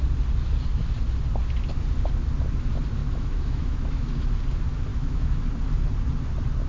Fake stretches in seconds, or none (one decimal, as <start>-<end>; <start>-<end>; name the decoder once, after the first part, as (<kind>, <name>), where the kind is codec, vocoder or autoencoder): 3.0-4.1 (autoencoder, DAC-VAE); 4.9-5.4